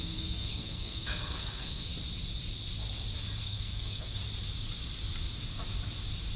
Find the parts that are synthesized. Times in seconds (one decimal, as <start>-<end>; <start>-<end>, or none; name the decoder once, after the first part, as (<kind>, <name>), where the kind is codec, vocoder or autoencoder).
0.0-1.9 (codec, SNAC); 3.4-4.2